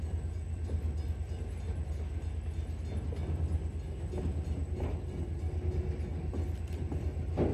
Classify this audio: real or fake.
real